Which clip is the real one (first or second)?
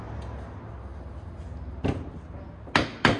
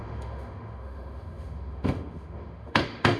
first